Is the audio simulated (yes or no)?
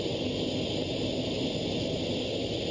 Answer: no